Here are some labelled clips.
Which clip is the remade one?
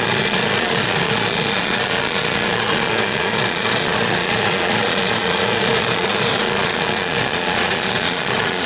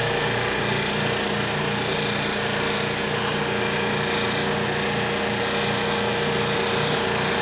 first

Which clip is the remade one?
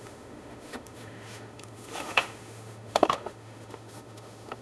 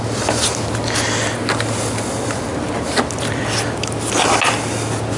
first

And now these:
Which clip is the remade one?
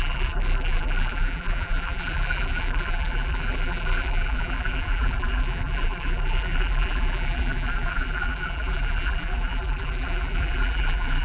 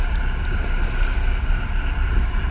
first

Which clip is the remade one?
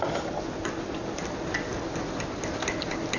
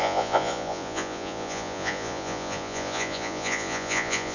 second